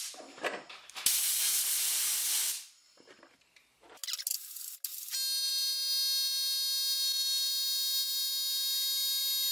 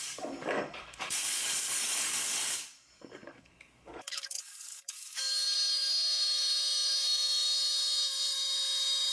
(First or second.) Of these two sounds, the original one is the first